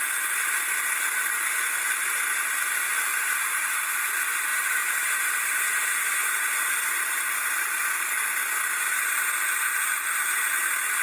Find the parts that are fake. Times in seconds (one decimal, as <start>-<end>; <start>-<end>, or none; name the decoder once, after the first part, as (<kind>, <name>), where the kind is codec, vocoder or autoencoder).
3.1-4.1 (vocoder, BigVGAN v2)